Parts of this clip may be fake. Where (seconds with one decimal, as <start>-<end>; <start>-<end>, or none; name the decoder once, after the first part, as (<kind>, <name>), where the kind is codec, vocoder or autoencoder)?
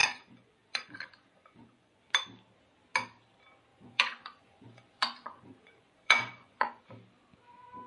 0.0-2.0 (vocoder, Vocos); 3.7-6.8